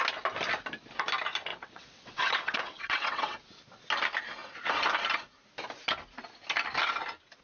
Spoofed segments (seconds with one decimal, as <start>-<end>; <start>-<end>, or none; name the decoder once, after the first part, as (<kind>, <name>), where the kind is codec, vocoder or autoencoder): 1.5-3.5 (vocoder, WaveNeXt)